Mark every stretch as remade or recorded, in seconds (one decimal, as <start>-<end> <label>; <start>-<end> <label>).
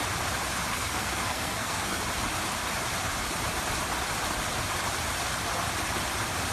0.0-0.7 recorded; 0.7-2.0 remade; 2.0-6.5 recorded